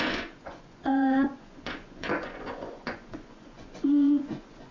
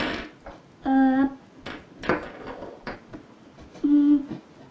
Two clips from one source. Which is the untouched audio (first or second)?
second